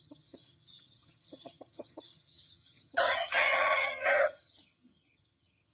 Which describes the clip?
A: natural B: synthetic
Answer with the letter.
B